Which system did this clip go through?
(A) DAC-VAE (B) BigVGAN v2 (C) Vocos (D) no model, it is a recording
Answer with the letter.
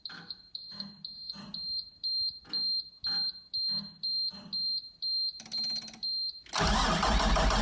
D